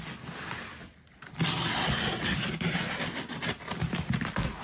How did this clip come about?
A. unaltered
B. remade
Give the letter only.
A